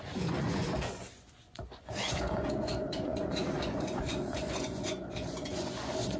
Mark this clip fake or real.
fake